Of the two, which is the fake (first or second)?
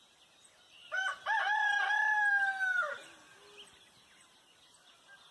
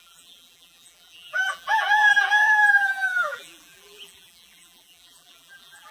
second